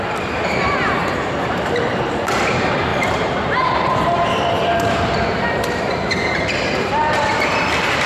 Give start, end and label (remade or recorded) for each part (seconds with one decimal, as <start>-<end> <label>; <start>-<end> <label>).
0.0-1.0 remade; 1.0-1.9 recorded; 1.9-8.1 remade